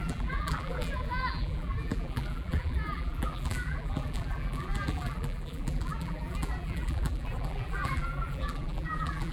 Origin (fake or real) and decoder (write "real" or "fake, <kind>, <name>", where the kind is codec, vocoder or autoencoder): fake, vocoder, BigVGAN v2